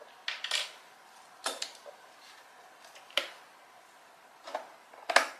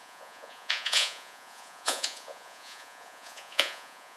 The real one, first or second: first